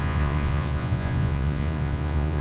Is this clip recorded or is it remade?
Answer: remade